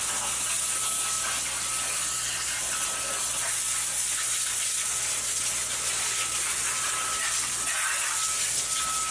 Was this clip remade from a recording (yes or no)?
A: no